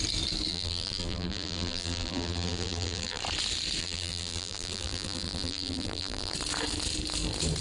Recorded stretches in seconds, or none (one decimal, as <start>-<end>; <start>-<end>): 0.0-0.5; 3.2-3.8; 6.3-7.6

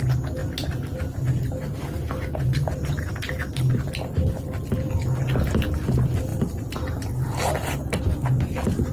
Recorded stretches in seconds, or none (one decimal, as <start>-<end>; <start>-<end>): 0.0-6.3; 8.0-8.9